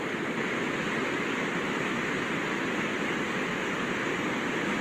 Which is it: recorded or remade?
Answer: recorded